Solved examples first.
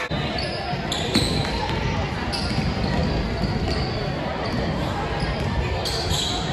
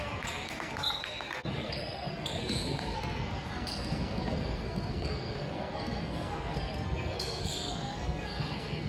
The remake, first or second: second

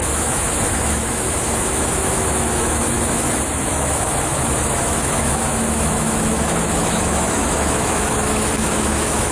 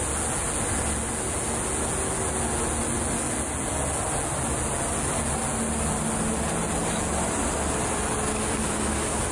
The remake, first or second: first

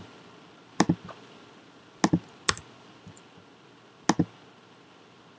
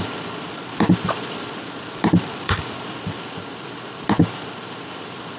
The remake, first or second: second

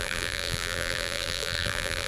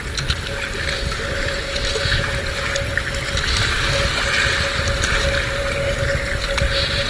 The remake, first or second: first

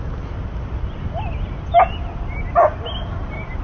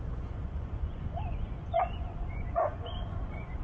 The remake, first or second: second